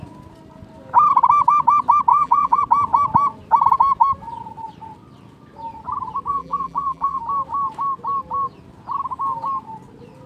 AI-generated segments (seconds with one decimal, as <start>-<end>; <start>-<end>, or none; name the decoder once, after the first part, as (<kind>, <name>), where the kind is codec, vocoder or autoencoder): 2.1-2.6 (vocoder, BigVGAN v2); 6.3-7.2